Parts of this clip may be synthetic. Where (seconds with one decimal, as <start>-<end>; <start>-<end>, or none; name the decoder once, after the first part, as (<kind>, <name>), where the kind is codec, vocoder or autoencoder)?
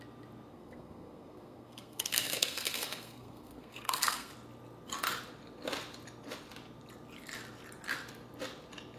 0.5-4.3 (codec, SNAC)